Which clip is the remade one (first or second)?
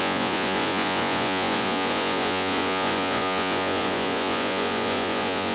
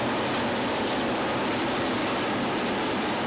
first